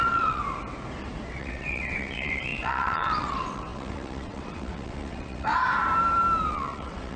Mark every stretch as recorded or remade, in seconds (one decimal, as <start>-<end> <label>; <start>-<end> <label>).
0.0-0.4 remade; 0.4-1.3 recorded; 1.3-5.5 remade; 5.5-6.5 recorded; 6.5-7.2 remade